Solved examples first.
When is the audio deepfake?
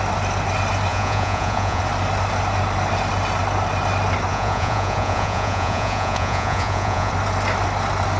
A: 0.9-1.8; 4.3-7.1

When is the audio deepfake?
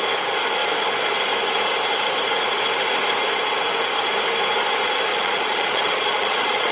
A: 5.1-6.7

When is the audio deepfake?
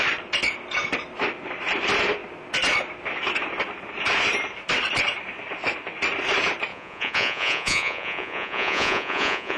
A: 6.7-9.6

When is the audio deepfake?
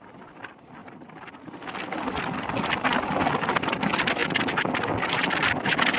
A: none